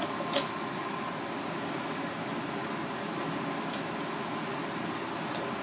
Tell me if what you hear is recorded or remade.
recorded